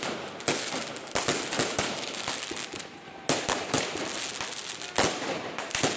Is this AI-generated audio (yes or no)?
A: no